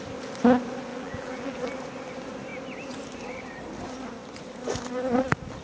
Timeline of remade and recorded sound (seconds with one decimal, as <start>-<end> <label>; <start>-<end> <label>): 0.0-0.9 recorded; 0.9-1.7 remade; 1.7-5.6 recorded